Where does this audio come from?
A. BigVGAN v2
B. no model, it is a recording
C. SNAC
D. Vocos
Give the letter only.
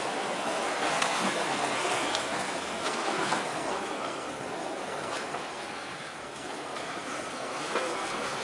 C